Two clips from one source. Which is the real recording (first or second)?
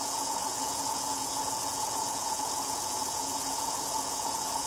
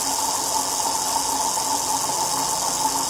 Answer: second